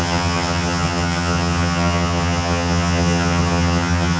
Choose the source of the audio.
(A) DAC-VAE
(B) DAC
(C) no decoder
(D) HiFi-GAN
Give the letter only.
D